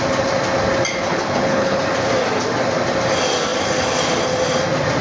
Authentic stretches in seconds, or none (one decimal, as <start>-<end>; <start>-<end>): 0.0-1.0; 1.8-5.0